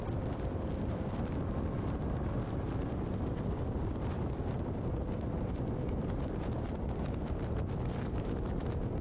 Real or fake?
fake